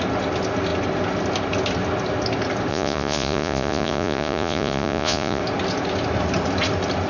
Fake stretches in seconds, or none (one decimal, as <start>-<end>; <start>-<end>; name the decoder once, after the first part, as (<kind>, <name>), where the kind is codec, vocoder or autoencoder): 2.7-5.4 (vocoder, Vocos)